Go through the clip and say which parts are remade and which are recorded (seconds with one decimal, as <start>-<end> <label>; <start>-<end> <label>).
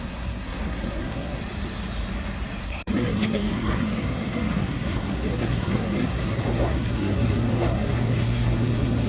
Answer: 0.0-1.4 remade; 1.4-2.6 recorded; 2.6-9.1 remade